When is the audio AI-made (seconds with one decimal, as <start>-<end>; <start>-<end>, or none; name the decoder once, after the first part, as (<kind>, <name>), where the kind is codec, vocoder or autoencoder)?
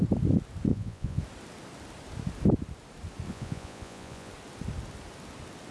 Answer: 0.7-1.2 (vocoder, Vocos); 3.3-4.3